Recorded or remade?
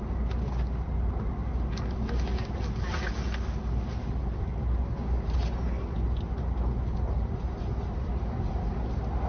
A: recorded